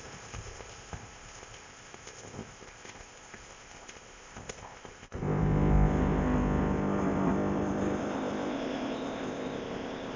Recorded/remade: remade